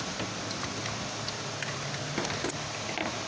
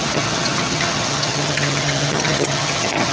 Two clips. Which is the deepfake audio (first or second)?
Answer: second